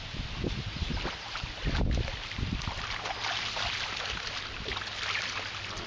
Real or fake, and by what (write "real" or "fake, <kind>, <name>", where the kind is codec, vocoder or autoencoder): real